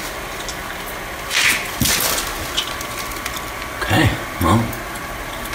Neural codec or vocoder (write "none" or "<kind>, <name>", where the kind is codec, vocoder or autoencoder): none